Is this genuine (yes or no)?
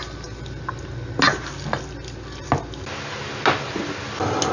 yes